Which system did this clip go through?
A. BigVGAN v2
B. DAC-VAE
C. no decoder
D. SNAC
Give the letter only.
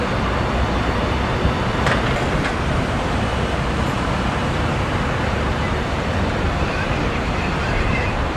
A